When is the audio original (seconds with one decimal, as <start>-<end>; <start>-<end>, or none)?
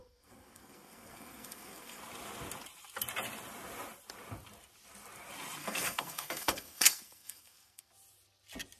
2.0-5.6; 7.9-8.8